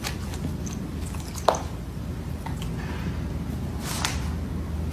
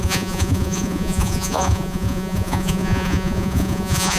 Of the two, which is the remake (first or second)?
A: second